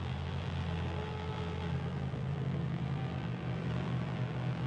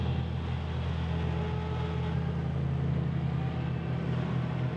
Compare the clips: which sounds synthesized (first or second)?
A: first